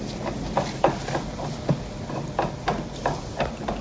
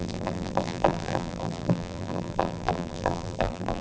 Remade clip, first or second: second